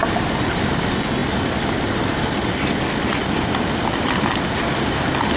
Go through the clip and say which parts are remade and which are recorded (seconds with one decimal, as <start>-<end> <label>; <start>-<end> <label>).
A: 0.0-5.4 recorded